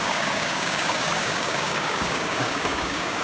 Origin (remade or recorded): remade